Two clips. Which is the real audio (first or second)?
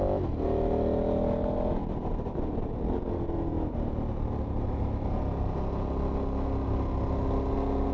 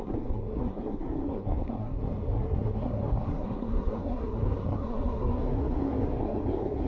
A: first